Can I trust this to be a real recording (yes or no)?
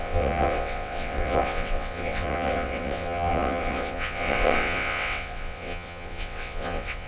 no